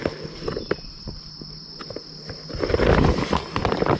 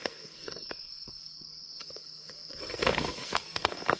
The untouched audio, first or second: first